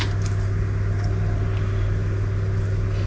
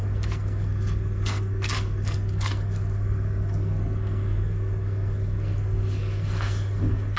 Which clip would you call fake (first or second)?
second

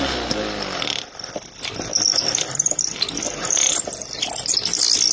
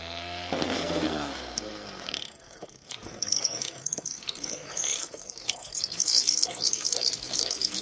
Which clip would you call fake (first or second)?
second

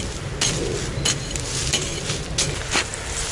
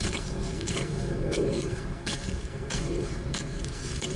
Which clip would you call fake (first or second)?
second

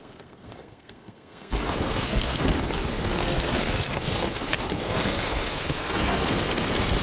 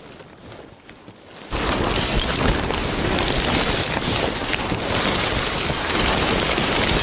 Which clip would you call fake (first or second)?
first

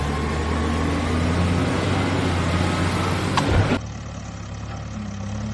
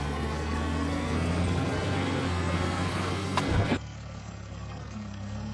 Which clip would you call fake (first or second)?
second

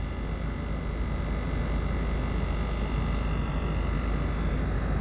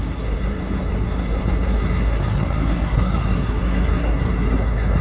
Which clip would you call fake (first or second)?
second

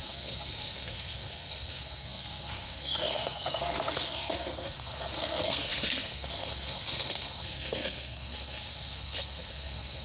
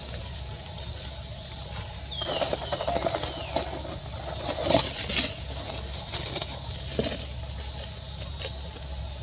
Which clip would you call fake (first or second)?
first